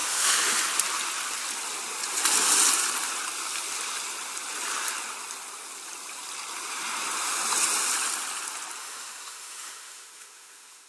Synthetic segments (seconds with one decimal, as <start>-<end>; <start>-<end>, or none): 0.0-0.6; 8.8-10.9